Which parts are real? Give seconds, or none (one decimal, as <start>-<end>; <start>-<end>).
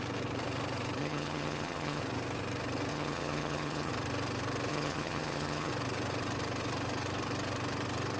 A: 0.0-1.0; 2.0-2.9; 3.9-4.7; 5.7-8.2